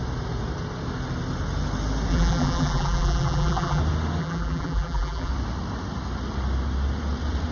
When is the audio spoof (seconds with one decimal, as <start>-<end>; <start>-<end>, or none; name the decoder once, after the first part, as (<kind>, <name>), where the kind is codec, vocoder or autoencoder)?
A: 2.1-3.8 (vocoder, BigVGAN v2); 4.2-5.3